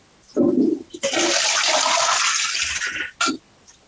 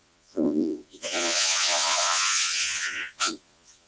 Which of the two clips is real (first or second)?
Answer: first